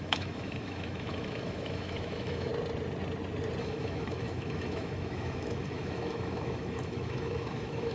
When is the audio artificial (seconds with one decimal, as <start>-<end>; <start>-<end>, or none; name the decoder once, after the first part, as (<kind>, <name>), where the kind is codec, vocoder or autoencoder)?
0.0-2.5 (autoencoder, DAC-VAE); 3.6-7.9

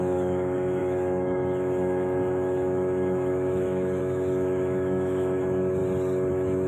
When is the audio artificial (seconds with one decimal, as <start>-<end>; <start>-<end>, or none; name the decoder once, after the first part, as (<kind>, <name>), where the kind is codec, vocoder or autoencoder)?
0.0-5.8 (autoencoder, DAC-VAE); 6.3-6.7

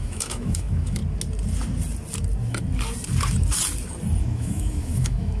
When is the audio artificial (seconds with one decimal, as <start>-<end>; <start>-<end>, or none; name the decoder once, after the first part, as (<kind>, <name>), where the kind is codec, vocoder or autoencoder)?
0.0-1.0 (autoencoder, DAC-VAE); 4.2-5.4

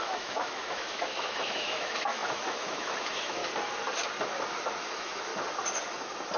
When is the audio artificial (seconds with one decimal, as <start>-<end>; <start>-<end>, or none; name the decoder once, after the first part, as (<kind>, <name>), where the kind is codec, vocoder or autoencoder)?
0.0-3.4 (autoencoder, DAC-VAE); 4.8-5.3

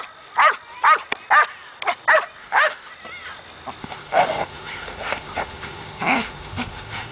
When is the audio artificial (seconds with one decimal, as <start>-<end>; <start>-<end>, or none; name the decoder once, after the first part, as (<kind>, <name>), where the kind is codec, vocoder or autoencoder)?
2.4-2.9 (autoencoder, DAC-VAE); 3.8-7.1